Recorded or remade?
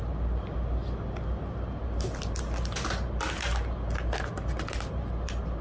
recorded